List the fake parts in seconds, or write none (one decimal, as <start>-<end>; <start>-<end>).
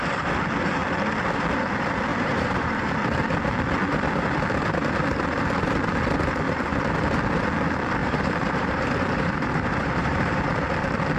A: 2.1-2.8; 8.0-10.4